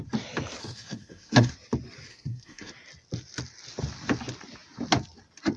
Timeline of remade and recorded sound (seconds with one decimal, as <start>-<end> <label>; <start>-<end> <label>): 0.0-0.6 recorded; 0.6-1.5 remade; 1.5-2.1 recorded; 2.1-2.7 remade; 2.7-5.6 recorded